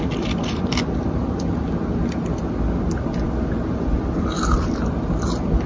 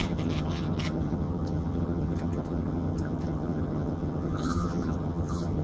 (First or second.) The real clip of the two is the first